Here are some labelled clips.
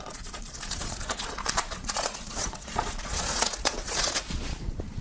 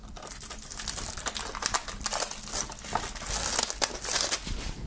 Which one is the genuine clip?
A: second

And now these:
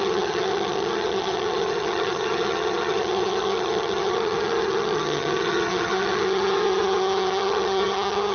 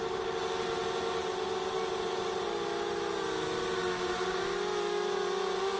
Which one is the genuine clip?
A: second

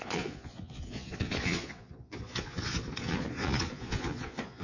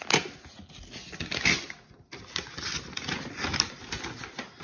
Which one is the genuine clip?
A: second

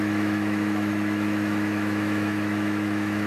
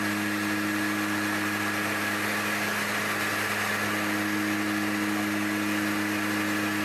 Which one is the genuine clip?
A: second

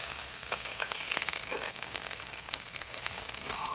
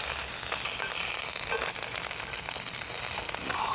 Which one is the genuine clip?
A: second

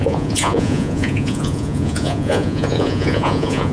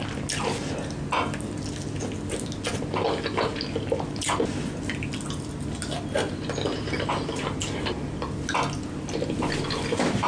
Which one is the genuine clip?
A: second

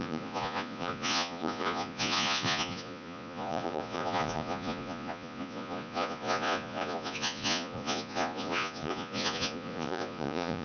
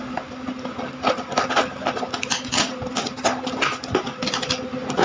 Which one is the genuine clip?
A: second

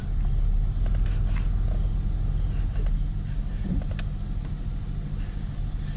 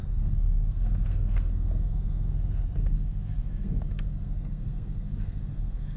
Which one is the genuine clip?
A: first